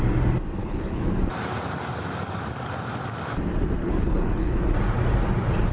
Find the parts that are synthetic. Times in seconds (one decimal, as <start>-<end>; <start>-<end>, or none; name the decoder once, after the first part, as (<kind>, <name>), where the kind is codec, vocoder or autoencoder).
0.6-1.1 (codec, HILCodec); 3.8-4.6